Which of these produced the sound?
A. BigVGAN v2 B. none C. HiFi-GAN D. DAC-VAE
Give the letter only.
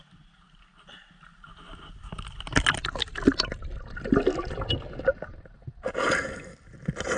B